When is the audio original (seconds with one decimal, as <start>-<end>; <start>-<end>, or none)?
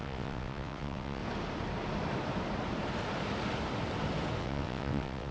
1.2-4.4